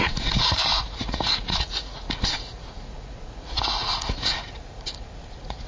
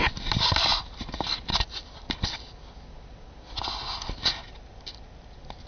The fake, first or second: first